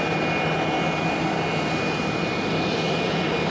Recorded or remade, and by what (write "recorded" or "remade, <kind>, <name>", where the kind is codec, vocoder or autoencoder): recorded